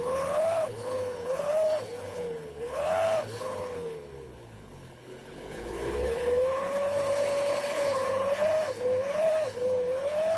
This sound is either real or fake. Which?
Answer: fake